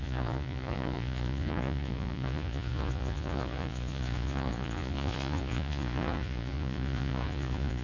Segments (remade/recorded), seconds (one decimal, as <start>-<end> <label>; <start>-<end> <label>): 0.0-7.8 remade